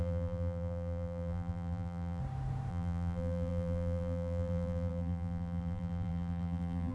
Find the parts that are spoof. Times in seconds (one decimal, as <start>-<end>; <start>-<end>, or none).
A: 0.0-2.2; 2.7-6.9